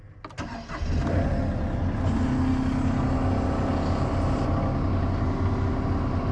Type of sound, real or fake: real